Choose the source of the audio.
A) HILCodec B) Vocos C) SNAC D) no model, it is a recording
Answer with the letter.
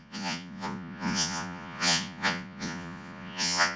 B